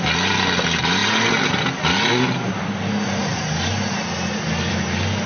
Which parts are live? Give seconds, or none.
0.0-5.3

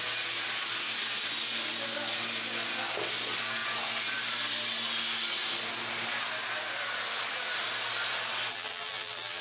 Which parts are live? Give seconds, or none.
0.0-8.5

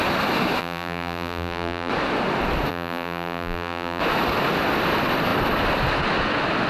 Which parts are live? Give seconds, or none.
0.0-0.6; 1.9-2.7; 4.0-6.7

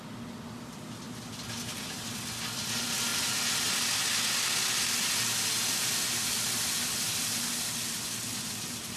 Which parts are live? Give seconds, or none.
0.0-9.0